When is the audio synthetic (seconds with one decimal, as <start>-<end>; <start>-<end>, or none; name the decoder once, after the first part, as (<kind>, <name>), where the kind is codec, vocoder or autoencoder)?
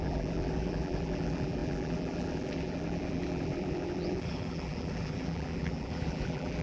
0.0-6.6 (vocoder, BigVGAN v2)